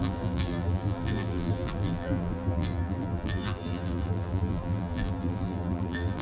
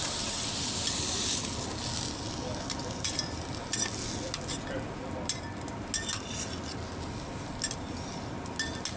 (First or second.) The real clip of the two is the second